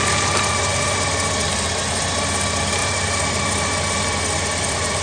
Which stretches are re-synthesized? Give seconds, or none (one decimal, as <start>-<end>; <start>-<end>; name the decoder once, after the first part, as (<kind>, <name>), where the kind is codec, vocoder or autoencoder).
none